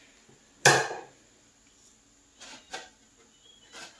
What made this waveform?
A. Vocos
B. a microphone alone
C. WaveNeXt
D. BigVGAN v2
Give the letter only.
B